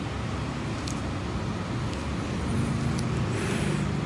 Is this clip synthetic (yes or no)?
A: no